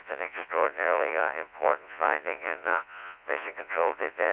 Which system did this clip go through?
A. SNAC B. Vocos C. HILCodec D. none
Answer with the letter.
B